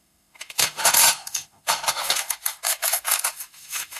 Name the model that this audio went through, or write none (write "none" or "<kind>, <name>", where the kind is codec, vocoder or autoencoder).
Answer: autoencoder, DAC-VAE